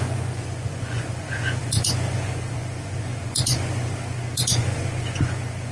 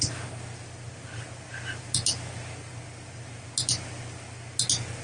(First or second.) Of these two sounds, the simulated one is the first